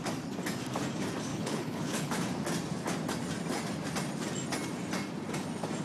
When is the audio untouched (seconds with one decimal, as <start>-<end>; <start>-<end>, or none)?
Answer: 0.0-1.3; 2.1-5.8